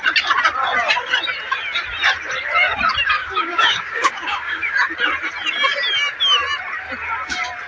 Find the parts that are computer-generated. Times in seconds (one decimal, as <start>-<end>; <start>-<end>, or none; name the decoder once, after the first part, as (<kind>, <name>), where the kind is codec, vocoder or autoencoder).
3.2-4.7 (codec, DAC)